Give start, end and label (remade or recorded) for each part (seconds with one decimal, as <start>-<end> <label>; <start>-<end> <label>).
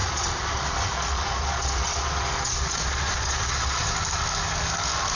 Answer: 0.0-3.8 remade; 3.8-5.1 recorded